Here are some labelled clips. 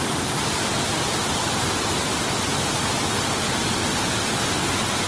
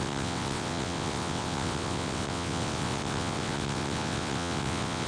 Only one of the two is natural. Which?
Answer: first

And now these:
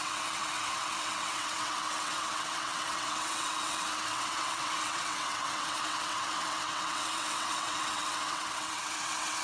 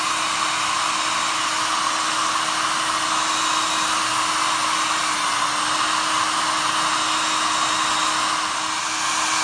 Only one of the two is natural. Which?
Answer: second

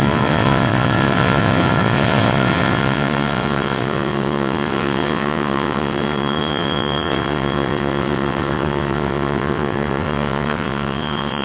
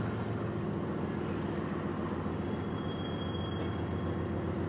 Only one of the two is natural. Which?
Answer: second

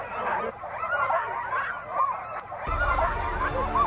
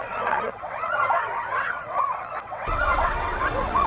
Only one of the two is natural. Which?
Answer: first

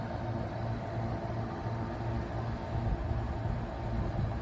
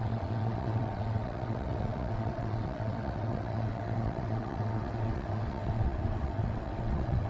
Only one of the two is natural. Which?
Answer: first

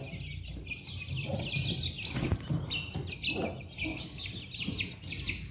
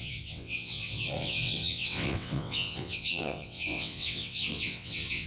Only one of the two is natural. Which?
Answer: first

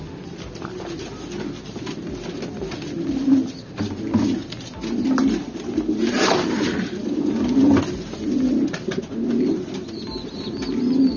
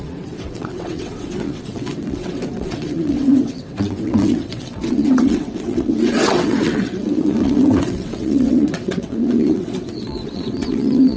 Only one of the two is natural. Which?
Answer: first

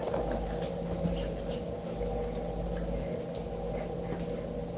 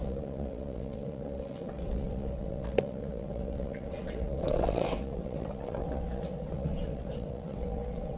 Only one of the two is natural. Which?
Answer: first